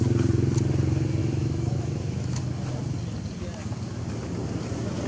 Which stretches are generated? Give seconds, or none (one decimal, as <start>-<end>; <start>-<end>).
1.2-2.4